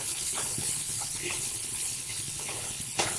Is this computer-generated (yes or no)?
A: yes